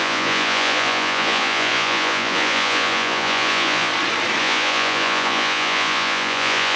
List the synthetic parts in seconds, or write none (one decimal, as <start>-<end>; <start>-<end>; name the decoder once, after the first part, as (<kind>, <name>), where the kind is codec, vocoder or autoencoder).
0.0-3.9 (vocoder, Vocos); 4.4-6.8